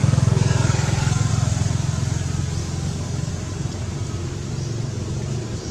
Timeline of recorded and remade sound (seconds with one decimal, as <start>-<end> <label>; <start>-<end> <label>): 0.0-1.3 remade; 1.3-2.6 recorded; 2.6-3.3 remade; 3.3-5.7 recorded